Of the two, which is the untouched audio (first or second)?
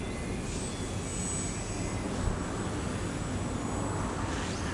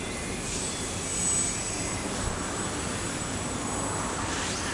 first